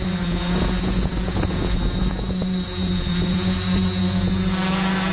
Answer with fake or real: fake